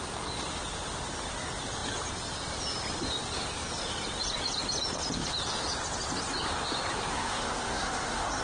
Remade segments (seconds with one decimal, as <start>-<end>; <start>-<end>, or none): 7.1-8.4